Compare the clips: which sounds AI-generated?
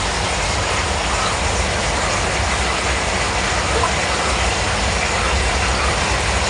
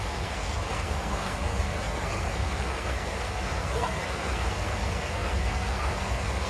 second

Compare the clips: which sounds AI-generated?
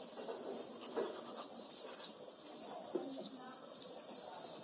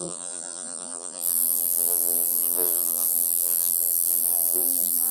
second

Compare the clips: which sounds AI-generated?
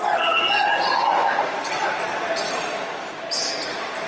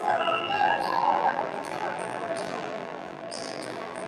second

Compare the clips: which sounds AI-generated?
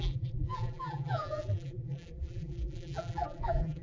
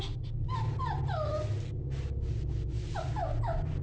first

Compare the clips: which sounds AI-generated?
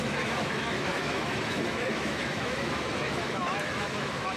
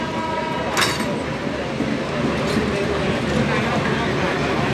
first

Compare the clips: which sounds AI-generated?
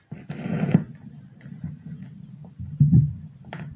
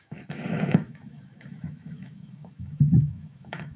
second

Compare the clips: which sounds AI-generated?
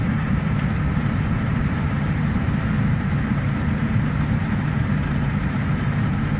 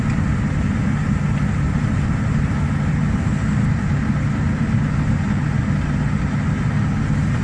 first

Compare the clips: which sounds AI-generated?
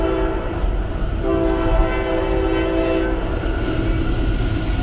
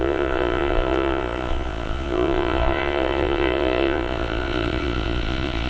second